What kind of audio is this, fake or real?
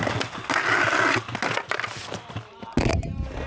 real